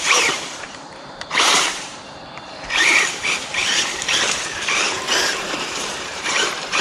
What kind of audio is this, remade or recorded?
remade